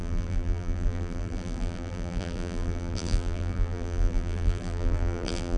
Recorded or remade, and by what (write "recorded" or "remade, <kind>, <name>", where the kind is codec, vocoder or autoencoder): remade, vocoder, BigVGAN v2